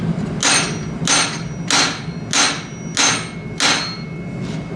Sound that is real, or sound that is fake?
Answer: real